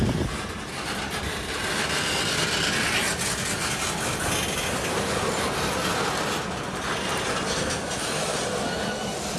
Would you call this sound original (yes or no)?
yes